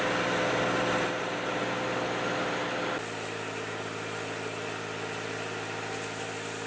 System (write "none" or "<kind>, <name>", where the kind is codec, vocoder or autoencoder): none